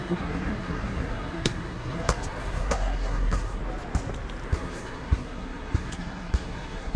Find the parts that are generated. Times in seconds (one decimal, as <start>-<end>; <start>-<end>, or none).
0.0-3.6; 4.5-7.0